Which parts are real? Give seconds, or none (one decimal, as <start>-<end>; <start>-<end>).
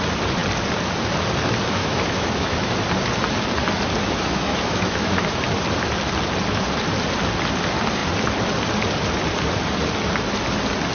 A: 0.0-1.8; 2.7-4.0; 5.3-10.9